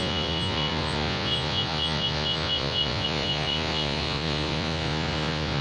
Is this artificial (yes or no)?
yes